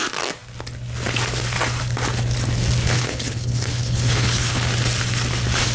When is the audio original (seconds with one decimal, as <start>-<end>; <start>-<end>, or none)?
0.0-2.8; 4.6-5.7